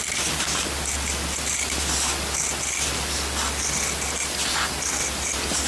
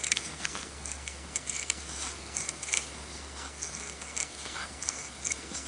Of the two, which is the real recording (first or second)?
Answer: first